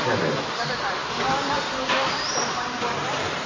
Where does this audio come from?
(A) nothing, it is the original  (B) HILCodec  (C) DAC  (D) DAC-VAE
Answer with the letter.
A